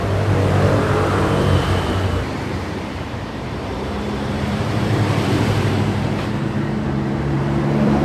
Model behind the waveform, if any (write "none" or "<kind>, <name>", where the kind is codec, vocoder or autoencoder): vocoder, BigVGAN v2